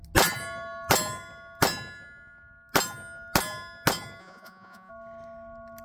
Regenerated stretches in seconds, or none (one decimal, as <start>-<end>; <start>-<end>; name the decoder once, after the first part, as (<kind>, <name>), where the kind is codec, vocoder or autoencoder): 4.2-4.9 (vocoder, Vocos)